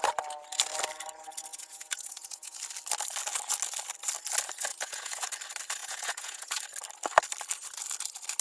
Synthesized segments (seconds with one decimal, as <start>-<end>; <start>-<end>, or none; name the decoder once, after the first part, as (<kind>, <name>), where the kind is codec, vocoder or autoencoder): 1.5-2.6 (vocoder, Vocos); 4.7-5.3; 5.8-6.6